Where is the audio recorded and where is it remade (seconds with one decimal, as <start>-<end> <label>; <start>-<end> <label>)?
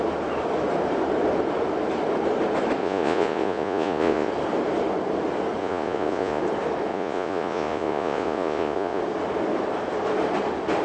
0.0-2.8 recorded; 2.8-4.3 remade; 4.3-5.6 recorded; 5.6-6.4 remade; 6.4-6.9 recorded; 6.9-9.0 remade; 9.0-10.8 recorded